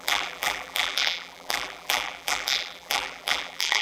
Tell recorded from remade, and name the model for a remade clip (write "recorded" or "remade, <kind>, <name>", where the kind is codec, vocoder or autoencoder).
remade, vocoder, BigVGAN v2